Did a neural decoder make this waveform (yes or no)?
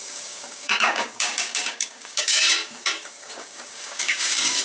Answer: yes